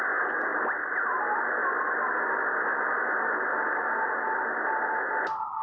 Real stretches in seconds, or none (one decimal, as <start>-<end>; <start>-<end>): 0.0-5.6